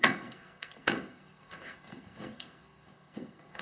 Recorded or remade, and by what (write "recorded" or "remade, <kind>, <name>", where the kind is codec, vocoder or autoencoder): remade, codec, SNAC